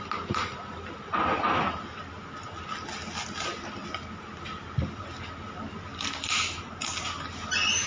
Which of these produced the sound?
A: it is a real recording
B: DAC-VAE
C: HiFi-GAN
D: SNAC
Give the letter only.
A